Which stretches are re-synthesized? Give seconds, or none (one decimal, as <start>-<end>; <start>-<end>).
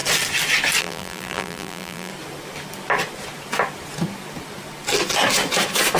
0.8-2.1